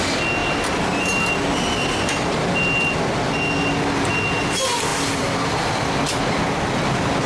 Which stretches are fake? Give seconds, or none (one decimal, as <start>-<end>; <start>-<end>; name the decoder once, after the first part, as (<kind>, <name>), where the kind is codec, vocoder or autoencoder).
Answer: none